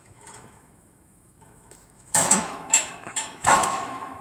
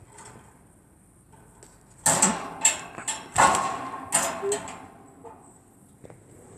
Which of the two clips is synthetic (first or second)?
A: first